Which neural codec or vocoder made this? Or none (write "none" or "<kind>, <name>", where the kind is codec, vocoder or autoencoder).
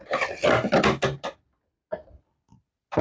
none